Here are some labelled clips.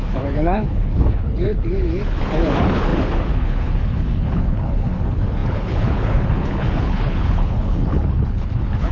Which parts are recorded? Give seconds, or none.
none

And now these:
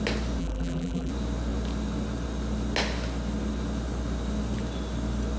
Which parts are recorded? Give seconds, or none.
0.0-0.4; 1.1-5.4

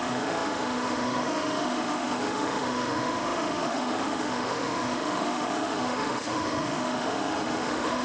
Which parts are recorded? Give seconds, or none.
none

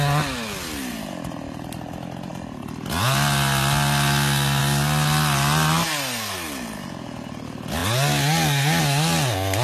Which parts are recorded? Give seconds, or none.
0.0-9.6